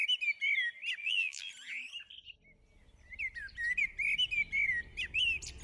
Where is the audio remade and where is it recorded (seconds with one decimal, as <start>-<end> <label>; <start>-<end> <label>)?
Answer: 0.0-1.0 recorded; 1.0-1.5 remade; 1.5-5.6 recorded